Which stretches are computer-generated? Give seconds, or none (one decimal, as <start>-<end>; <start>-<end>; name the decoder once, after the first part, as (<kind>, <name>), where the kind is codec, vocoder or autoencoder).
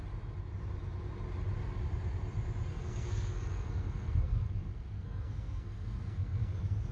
2.7-6.9 (codec, SNAC)